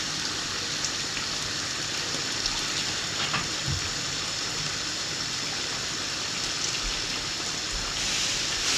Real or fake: real